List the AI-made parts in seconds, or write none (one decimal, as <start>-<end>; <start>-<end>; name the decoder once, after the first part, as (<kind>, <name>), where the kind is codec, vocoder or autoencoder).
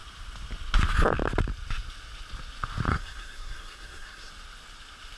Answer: 2.9-4.3 (codec, SNAC)